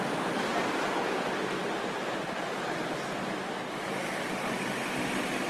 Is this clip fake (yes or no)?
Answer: no